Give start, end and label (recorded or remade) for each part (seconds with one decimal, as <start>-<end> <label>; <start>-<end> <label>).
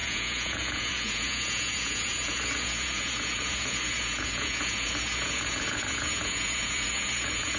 0.0-7.6 remade